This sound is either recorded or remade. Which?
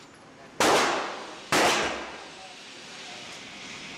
recorded